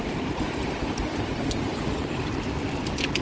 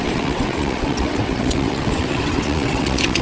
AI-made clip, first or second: second